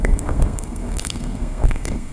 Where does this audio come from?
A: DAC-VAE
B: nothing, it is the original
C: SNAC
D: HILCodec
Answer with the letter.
C